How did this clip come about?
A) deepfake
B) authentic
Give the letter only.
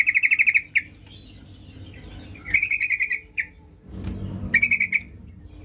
B